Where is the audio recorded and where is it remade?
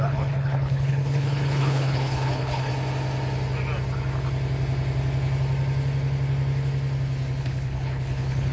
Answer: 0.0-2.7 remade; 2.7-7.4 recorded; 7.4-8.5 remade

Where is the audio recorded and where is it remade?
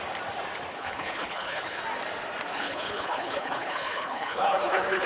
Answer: 0.0-0.7 recorded; 0.7-1.8 remade; 1.8-2.5 recorded; 2.5-5.1 remade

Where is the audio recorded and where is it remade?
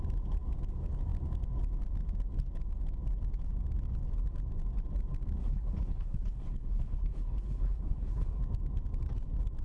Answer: 0.0-5.4 recorded; 5.4-8.4 remade; 8.4-9.6 recorded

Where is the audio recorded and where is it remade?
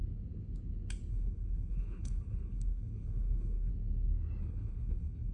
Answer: 0.0-1.1 recorded; 1.1-3.7 remade; 3.7-4.4 recorded; 4.4-5.3 remade